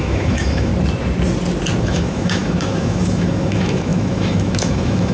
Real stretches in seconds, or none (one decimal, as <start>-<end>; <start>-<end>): 0.7-1.8